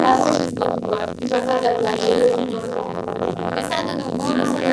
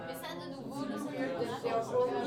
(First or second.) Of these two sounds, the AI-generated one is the first